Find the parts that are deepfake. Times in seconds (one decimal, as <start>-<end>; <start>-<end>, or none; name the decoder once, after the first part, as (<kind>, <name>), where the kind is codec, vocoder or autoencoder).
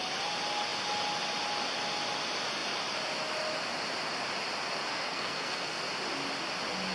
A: 4.9-5.8 (codec, SNAC)